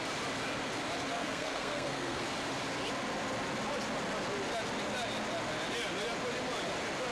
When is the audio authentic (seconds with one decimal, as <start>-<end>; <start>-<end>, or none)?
0.0-1.1; 2.2-7.1